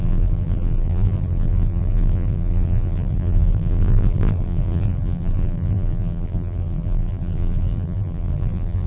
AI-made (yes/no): yes